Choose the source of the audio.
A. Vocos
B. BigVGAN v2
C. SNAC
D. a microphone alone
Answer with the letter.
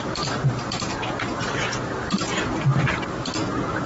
D